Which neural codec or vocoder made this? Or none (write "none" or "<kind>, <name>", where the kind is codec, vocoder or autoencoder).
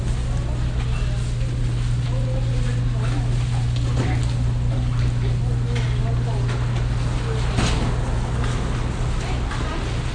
none